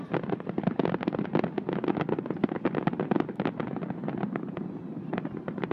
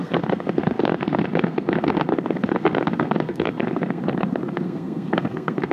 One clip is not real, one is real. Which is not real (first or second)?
second